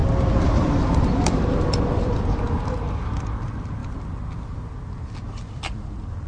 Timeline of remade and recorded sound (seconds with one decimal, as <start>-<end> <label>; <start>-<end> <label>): 0.0-3.8 remade; 3.8-6.3 recorded